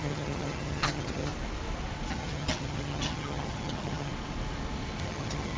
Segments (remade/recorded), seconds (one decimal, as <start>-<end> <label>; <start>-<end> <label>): 0.0-1.3 remade; 1.3-2.1 recorded; 2.1-4.1 remade; 4.1-5.0 recorded; 5.0-5.6 remade

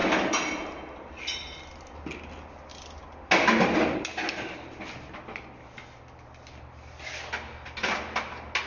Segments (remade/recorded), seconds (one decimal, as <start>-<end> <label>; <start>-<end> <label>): 0.0-8.7 recorded

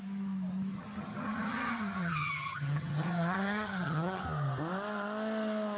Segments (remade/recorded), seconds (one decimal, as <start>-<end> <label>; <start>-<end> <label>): 0.0-0.7 recorded; 0.7-4.2 remade; 4.2-5.8 recorded

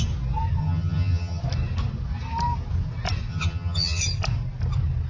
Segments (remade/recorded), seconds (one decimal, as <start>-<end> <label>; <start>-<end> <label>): 0.0-0.6 recorded; 0.6-1.4 remade; 1.4-3.3 recorded; 3.3-4.0 remade; 4.0-5.1 recorded

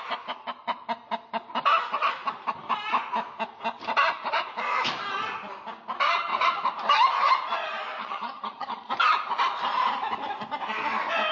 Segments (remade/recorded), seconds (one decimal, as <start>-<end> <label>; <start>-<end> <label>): 0.0-8.0 recorded; 8.0-8.9 remade; 8.9-11.3 recorded